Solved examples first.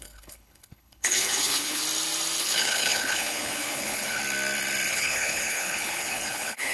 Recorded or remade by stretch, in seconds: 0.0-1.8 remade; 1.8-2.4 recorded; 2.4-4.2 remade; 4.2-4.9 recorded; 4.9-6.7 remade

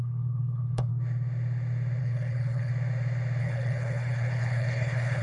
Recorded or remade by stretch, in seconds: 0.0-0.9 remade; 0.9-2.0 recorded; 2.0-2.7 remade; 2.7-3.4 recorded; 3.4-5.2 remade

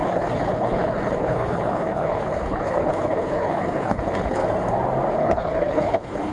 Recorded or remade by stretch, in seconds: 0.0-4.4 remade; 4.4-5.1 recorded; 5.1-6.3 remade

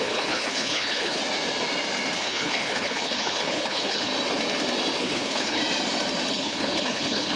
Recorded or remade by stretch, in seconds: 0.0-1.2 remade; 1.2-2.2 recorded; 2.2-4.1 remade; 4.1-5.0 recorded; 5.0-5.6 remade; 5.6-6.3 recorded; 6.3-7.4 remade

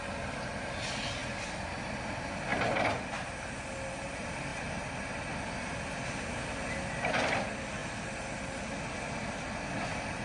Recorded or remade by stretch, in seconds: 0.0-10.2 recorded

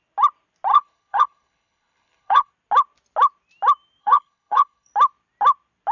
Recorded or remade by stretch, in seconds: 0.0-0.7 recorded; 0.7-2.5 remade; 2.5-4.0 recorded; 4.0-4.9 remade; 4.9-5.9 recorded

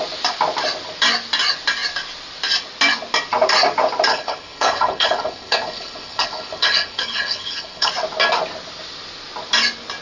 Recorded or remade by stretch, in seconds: 0.0-4.1 recorded; 4.1-7.9 remade; 7.9-10.0 recorded

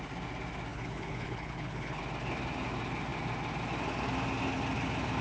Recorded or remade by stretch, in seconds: 0.0-0.7 recorded; 0.7-2.0 remade; 2.0-5.2 recorded